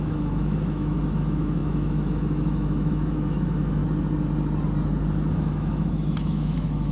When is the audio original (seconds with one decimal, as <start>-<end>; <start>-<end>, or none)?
3.8-5.3